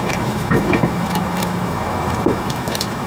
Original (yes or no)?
no